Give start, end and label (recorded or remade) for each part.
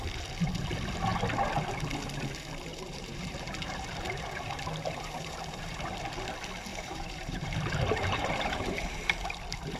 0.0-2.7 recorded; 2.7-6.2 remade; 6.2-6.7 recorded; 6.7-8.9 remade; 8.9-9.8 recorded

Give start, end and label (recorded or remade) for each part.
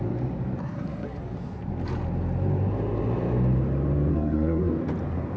0.0-0.6 recorded; 0.6-1.2 remade; 1.2-4.1 recorded; 4.1-4.7 remade; 4.7-5.4 recorded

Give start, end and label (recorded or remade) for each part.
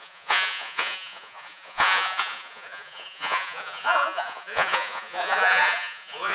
0.0-6.3 remade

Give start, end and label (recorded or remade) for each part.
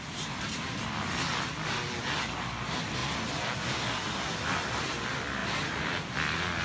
0.0-5.4 recorded; 5.4-5.9 remade; 5.9-6.6 recorded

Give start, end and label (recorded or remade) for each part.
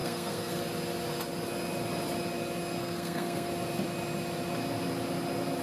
0.0-0.6 remade; 0.6-2.8 recorded; 2.8-3.5 remade; 3.5-5.6 recorded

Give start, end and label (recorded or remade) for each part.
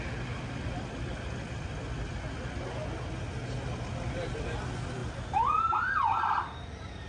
0.0-7.1 recorded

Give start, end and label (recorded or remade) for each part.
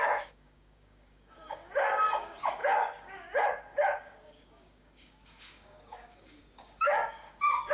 0.0-7.7 remade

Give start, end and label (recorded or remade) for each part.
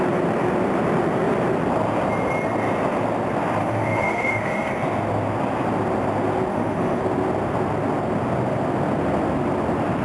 0.0-3.6 recorded; 3.6-4.7 remade; 4.7-6.5 recorded; 6.5-7.0 remade; 7.0-10.0 recorded